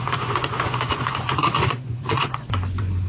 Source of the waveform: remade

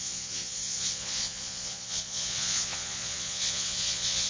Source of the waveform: remade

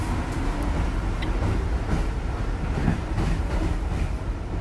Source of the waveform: recorded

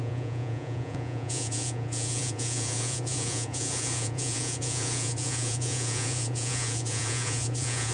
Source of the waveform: remade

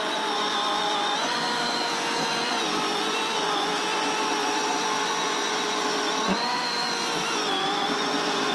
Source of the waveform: remade